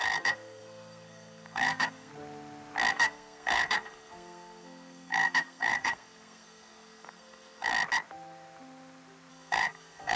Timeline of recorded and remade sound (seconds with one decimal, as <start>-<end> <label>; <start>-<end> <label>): 0.0-2.1 remade; 2.1-2.9 recorded; 2.9-7.7 remade; 7.7-9.3 recorded; 9.3-10.2 remade

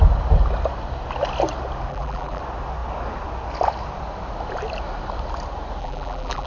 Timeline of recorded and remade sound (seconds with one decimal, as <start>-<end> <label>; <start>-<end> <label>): 0.0-1.9 recorded; 1.9-2.4 remade; 2.4-5.8 recorded; 5.8-6.5 remade

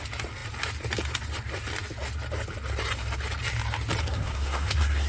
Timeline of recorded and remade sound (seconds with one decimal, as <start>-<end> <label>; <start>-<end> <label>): 0.0-4.0 recorded; 4.0-5.1 remade

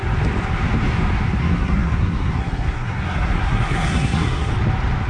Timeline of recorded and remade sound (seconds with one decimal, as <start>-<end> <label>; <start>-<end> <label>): 0.0-1.4 recorded; 1.4-4.5 remade; 4.5-5.1 recorded